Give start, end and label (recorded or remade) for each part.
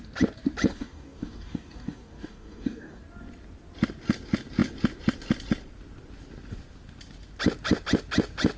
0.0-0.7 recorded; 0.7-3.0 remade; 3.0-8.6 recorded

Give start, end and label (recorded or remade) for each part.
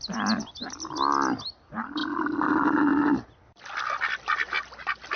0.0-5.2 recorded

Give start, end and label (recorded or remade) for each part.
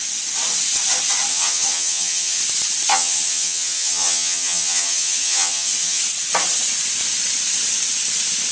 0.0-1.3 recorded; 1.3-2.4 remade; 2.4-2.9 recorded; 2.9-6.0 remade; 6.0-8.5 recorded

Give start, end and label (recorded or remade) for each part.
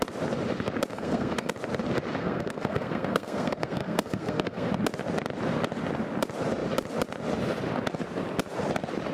0.0-0.9 recorded; 0.9-1.5 remade; 1.5-2.2 recorded; 2.2-4.7 remade; 4.7-9.1 recorded